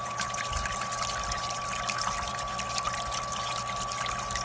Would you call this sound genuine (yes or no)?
yes